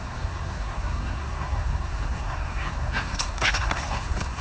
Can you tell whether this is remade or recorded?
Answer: remade